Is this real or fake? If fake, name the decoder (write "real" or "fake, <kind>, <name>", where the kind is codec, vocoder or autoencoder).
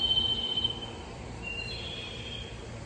fake, vocoder, BigVGAN v2